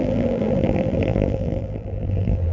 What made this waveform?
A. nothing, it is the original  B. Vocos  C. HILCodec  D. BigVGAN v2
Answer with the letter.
D